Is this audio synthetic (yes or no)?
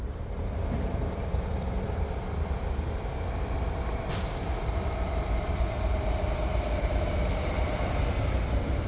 yes